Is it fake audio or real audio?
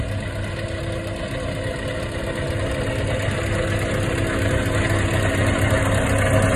real